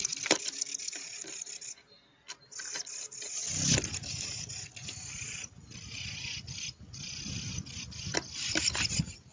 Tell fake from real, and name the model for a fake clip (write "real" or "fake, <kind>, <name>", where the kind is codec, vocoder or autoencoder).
real